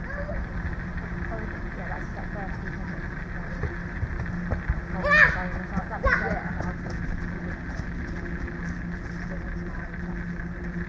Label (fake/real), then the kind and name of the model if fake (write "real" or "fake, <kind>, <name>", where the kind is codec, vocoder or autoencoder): real